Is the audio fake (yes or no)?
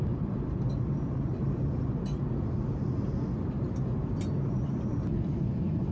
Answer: no